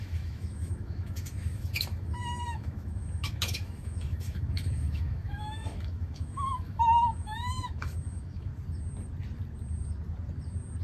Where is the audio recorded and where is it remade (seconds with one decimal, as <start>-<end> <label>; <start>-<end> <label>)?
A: 0.0-8.5 remade; 8.5-10.8 recorded